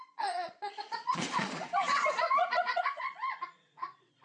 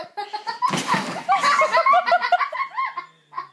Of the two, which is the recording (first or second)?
second